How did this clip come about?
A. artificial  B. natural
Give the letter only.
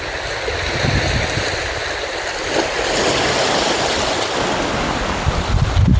B